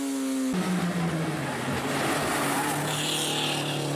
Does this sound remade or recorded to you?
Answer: recorded